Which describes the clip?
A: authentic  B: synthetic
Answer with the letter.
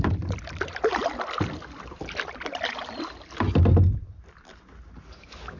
A